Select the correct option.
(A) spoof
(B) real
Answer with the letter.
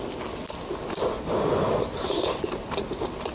B